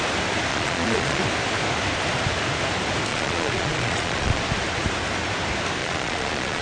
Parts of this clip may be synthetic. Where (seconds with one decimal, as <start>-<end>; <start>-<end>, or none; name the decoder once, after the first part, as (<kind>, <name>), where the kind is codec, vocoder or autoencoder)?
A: 0.5-1.2 (vocoder, Vocos); 3.1-4.4; 5.8-6.6